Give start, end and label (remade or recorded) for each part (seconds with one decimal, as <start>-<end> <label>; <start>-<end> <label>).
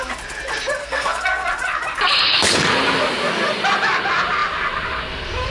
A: 0.0-0.8 recorded; 0.8-1.5 remade; 1.5-5.5 recorded